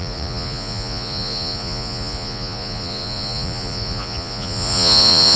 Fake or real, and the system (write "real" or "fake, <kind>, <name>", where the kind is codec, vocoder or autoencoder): fake, vocoder, Vocos